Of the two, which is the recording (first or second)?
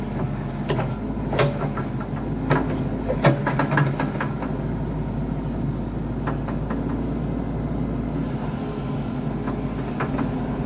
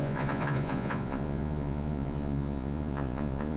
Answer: first